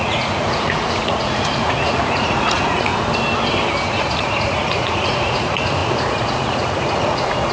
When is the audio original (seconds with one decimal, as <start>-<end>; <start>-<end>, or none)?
2.9-3.9